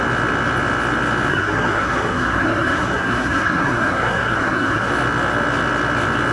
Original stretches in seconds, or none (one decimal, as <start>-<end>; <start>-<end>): 0.0-1.3; 4.9-6.3